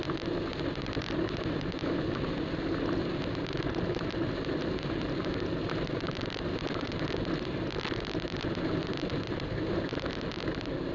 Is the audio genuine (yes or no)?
yes